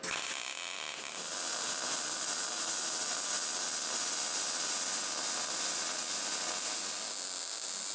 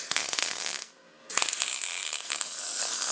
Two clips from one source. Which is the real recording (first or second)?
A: first